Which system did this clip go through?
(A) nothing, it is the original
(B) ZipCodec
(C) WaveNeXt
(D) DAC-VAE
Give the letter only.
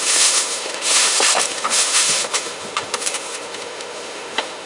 D